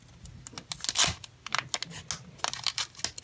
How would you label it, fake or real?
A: real